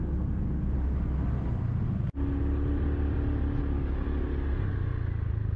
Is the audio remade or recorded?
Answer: recorded